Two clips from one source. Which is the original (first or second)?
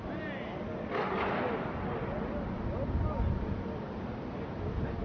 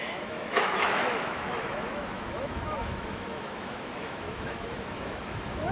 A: first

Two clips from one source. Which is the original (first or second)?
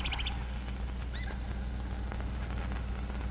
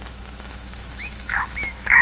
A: first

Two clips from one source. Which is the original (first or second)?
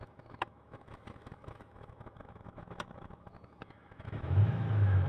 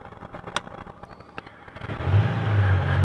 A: second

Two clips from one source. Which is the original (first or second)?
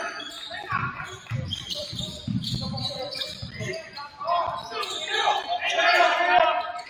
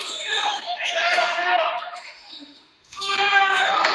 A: first